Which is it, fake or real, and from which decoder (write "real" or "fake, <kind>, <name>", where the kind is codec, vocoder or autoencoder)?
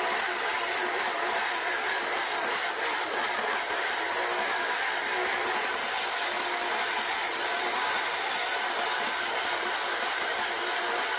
real